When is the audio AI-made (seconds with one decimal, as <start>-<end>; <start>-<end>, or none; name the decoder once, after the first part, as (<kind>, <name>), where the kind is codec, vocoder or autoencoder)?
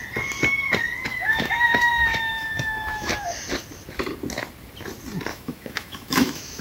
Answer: 1.1-3.1 (autoencoder, DAC-VAE); 5.3-6.6